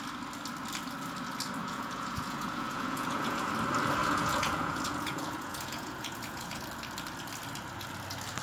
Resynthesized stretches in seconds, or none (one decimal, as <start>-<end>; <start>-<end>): 1.6-3.5; 4.0-6.6